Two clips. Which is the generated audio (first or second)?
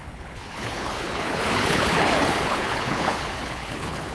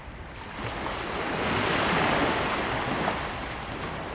first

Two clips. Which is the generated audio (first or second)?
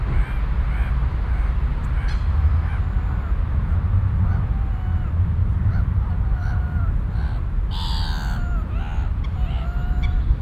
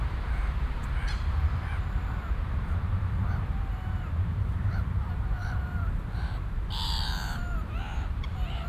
second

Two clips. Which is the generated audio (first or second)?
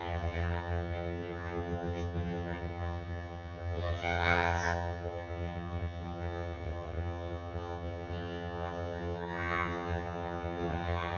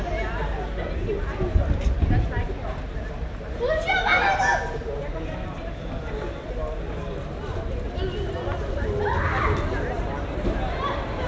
first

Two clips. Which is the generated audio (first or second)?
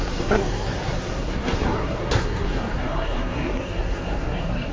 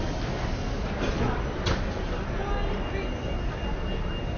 first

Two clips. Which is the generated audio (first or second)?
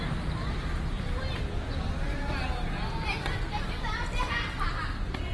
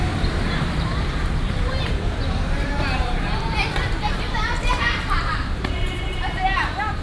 second